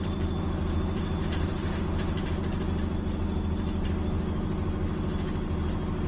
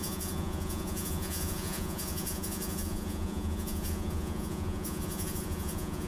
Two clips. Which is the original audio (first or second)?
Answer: first